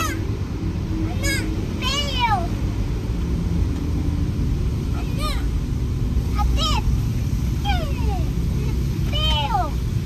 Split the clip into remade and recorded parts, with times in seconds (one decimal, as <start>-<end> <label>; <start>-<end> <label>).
0.0-10.1 recorded